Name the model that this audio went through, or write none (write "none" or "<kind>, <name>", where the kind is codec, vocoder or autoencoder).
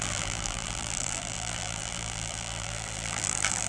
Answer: vocoder, BigVGAN v2